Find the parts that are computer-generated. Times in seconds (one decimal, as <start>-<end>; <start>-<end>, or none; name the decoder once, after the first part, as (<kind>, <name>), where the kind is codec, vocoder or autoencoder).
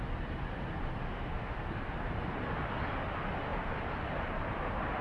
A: 1.0-1.6 (autoencoder, DAC-VAE)